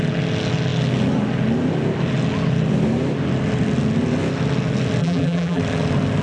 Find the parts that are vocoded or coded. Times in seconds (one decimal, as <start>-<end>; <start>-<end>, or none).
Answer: 5.0-5.6